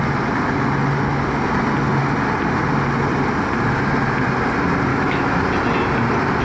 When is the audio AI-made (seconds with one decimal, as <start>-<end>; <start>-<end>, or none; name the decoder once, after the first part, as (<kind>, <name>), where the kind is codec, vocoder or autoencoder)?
4.9-5.4 (autoencoder, DAC-VAE)

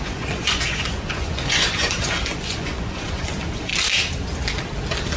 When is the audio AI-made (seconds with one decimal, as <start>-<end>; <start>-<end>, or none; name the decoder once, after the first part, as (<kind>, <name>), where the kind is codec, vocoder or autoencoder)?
0.0-3.7 (vocoder, Vocos)

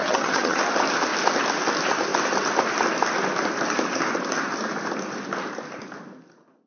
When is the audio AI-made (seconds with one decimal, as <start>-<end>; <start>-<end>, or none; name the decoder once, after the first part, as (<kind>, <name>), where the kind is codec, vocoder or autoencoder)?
0.0-0.6 (vocoder, HiFi-GAN)

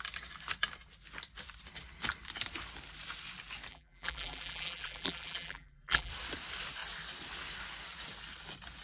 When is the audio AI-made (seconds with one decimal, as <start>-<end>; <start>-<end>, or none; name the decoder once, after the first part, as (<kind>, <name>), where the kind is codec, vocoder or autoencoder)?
3.7-6.1 (vocoder, BigVGAN v2)

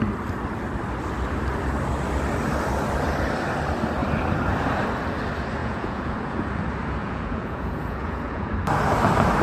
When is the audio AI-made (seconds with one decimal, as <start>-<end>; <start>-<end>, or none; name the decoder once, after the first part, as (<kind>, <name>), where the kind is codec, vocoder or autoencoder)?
5.6-6.4 (vocoder, Vocos); 7.0-8.5